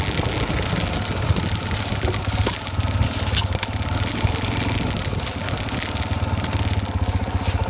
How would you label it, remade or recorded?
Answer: recorded